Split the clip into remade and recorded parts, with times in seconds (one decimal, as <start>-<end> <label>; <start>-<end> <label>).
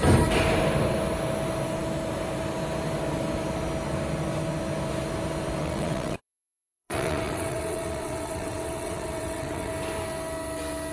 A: 0.0-5.6 recorded; 5.6-9.7 remade; 9.7-10.9 recorded